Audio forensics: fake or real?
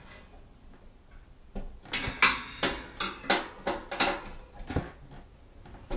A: real